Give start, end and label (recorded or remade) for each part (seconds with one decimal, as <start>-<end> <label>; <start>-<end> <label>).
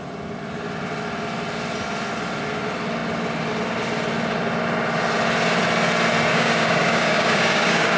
0.0-6.3 recorded; 6.3-8.0 remade